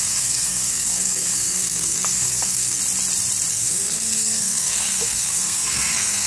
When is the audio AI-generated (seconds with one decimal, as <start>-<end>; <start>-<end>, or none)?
0.0-2.8; 3.5-6.3